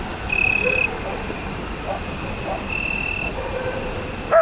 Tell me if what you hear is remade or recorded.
recorded